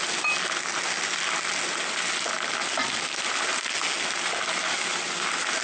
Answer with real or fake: real